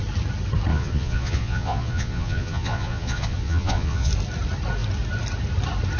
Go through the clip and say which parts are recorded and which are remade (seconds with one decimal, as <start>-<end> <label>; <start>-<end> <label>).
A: 0.0-0.7 recorded; 0.7-4.1 remade; 4.1-6.0 recorded